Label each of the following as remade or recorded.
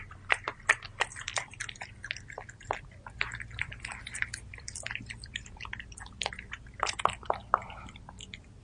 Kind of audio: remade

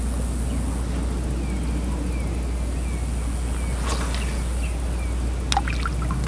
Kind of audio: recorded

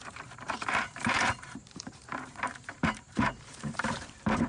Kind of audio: remade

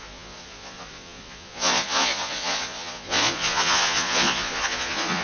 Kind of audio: remade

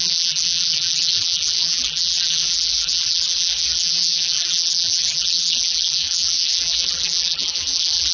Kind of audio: remade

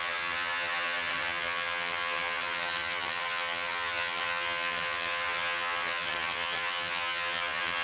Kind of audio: remade